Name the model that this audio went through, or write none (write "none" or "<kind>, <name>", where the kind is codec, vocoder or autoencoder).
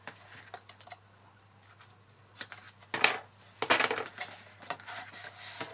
none